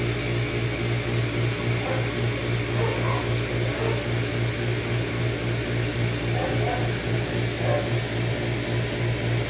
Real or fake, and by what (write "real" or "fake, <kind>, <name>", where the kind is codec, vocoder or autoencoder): real